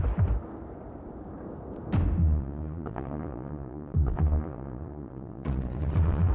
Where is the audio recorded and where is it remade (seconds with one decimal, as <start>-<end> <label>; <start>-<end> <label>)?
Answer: 0.0-2.2 recorded; 2.2-6.3 remade